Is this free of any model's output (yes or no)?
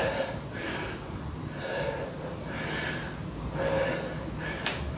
yes